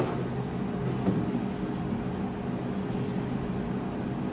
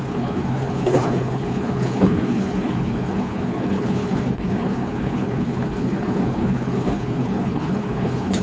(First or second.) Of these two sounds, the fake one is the second